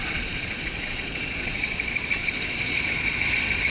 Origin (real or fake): fake